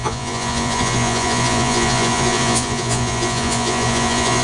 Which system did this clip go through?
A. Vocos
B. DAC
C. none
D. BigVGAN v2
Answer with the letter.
A